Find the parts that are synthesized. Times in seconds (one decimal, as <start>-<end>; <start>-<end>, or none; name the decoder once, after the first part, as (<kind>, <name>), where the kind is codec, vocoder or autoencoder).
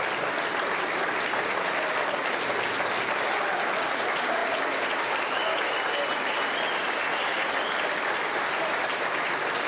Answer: 4.4-5.0 (vocoder, BigVGAN v2); 8.2-8.8